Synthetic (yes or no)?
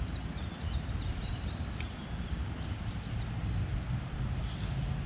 no